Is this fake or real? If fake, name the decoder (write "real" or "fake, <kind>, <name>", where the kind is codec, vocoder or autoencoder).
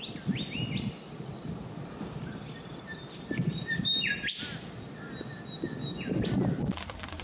real